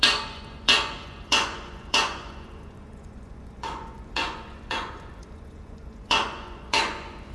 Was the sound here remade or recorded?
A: remade